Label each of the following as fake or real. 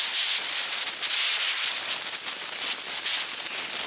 real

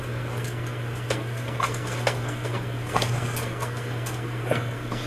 fake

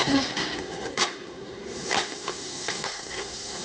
fake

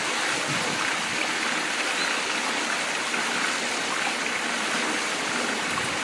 real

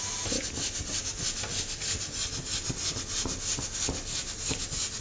real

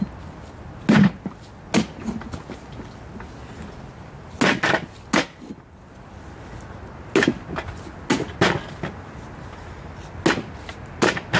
real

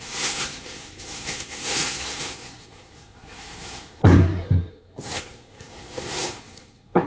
fake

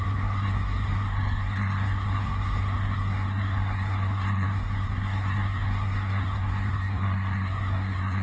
fake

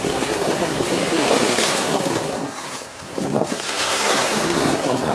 fake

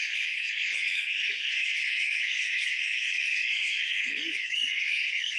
fake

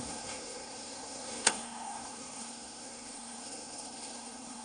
fake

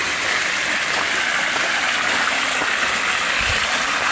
real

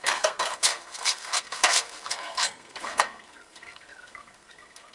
fake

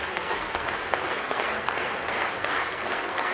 fake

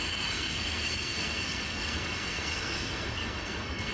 fake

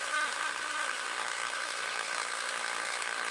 fake